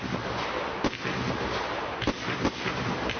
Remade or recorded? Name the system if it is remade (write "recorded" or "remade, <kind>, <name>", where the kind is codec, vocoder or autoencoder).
recorded